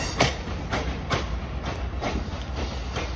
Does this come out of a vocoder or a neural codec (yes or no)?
no